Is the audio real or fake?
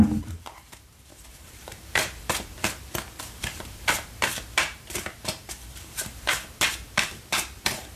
fake